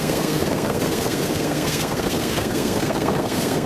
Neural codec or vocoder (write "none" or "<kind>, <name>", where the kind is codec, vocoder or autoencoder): codec, SNAC